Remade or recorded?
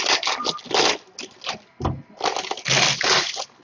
recorded